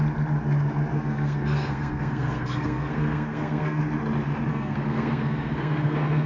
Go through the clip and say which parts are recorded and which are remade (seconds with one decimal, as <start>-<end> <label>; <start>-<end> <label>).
0.0-0.9 recorded; 0.9-3.8 remade; 3.8-4.5 recorded; 4.5-6.3 remade

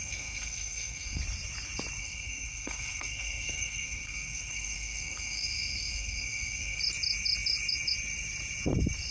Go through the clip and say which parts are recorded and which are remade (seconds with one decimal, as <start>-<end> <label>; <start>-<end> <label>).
0.0-1.2 remade; 1.2-2.0 recorded; 2.0-6.8 remade; 6.8-9.1 recorded

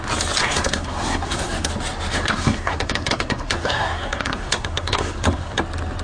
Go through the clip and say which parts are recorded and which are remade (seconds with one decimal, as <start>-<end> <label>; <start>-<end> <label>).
0.0-0.4 recorded; 0.4-1.7 remade; 1.7-2.1 recorded; 2.1-5.6 remade; 5.6-6.0 recorded

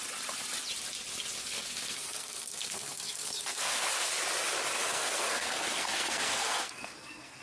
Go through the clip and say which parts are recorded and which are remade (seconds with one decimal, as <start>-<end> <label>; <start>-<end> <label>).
0.0-1.4 recorded; 1.4-4.1 remade; 4.1-4.8 recorded; 4.8-7.4 remade

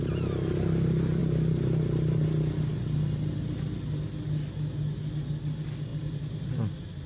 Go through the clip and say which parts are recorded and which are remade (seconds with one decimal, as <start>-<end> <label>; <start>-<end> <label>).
0.0-7.1 recorded

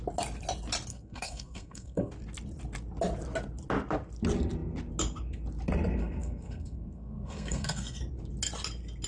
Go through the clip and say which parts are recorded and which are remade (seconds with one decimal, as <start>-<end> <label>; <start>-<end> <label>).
0.0-0.9 recorded; 0.9-2.1 remade; 2.1-6.0 recorded; 6.0-8.0 remade; 8.0-9.1 recorded

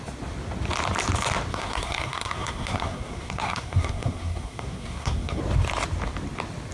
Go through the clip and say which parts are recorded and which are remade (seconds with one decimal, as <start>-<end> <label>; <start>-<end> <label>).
0.0-1.5 recorded; 1.5-5.4 remade; 5.4-6.7 recorded